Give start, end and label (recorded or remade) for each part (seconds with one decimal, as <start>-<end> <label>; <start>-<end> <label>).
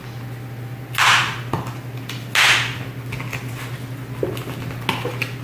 0.0-5.4 recorded